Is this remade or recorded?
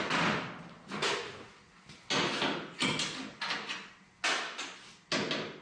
recorded